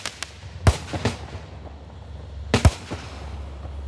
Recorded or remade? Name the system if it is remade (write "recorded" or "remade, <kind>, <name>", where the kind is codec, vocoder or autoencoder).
recorded